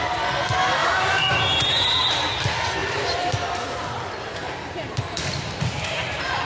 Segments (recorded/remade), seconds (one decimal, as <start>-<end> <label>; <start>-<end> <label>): 0.0-0.8 recorded; 0.8-2.3 remade; 2.3-2.8 recorded; 2.8-3.3 remade; 3.3-4.4 recorded; 4.4-6.4 remade